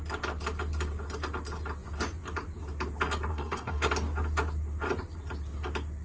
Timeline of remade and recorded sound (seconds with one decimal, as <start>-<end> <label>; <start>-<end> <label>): 0.0-3.3 recorded; 3.3-3.9 remade; 3.9-6.0 recorded